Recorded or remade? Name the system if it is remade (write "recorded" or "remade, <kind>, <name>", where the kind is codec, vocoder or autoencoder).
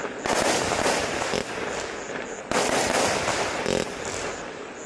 recorded